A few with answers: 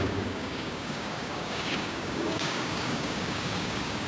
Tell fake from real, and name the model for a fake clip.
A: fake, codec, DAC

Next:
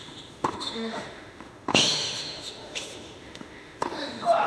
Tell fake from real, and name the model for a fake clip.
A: fake, autoencoder, DAC-VAE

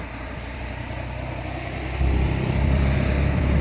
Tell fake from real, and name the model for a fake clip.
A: fake, vocoder, BigVGAN v2